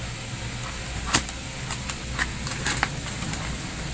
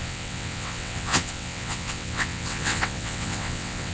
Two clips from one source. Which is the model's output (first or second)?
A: second